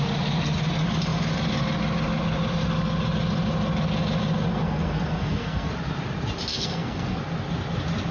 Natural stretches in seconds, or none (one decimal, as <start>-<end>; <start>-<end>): 0.0-4.5; 5.7-6.5; 7.2-8.1